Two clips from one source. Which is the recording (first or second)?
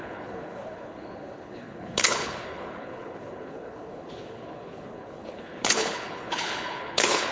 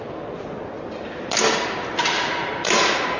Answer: second